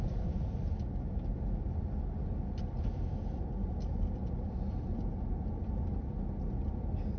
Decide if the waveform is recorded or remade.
recorded